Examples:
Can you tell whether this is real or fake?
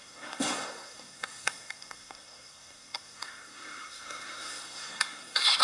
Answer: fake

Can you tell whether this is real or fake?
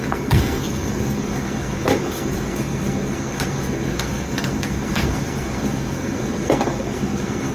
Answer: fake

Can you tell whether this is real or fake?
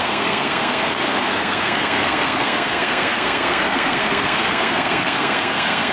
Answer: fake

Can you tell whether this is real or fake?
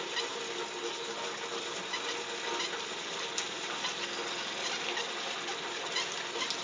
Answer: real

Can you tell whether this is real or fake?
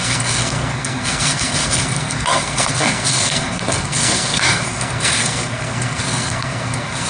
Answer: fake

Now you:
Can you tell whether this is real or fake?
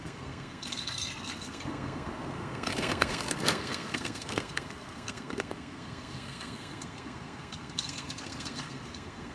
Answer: fake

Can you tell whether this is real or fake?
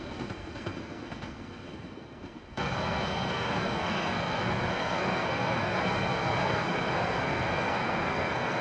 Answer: fake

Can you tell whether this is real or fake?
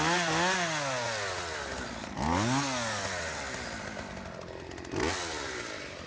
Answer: real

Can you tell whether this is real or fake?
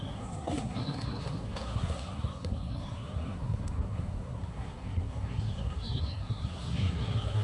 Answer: fake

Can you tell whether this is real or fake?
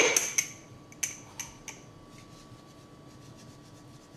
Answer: real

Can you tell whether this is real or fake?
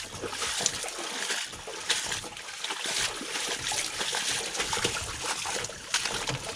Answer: real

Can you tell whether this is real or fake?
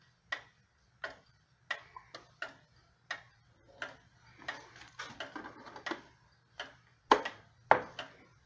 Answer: real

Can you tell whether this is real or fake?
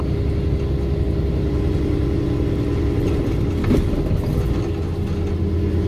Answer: real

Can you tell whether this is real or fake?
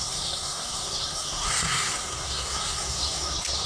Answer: fake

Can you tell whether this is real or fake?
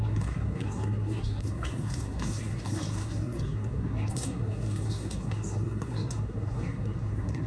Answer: fake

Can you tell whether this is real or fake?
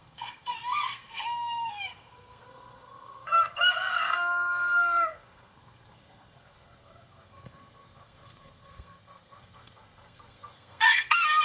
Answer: fake